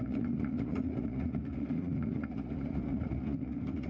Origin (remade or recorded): remade